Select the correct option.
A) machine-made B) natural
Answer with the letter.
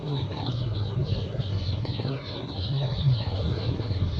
A